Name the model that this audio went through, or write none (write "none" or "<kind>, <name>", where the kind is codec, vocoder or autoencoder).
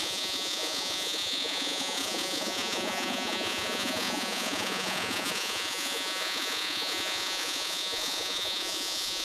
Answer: vocoder, Vocos